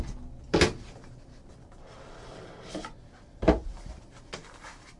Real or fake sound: real